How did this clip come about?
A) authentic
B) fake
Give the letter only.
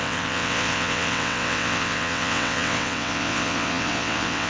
B